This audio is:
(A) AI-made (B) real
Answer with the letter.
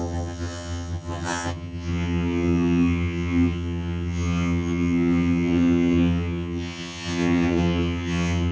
A